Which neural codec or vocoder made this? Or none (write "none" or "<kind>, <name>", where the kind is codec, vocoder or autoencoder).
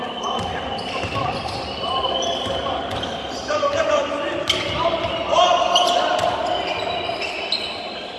none